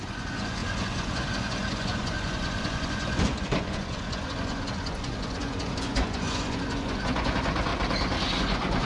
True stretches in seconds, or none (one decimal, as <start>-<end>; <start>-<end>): 7.7-8.4